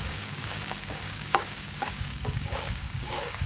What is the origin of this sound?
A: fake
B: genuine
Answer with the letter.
A